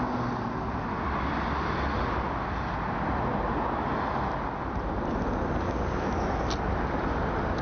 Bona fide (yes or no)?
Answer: yes